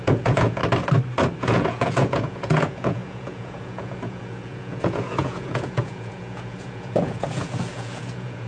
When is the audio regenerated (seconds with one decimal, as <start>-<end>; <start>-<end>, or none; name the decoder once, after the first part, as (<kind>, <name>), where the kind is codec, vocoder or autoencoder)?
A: 0.0-0.6 (vocoder, Vocos); 1.4-8.5